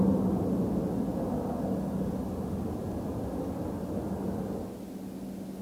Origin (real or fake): real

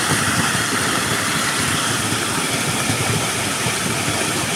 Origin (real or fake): fake